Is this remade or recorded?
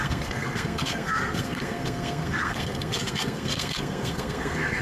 remade